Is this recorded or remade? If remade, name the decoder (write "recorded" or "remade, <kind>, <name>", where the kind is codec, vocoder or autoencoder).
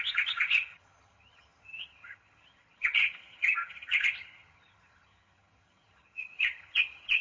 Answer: remade, vocoder, HiFi-GAN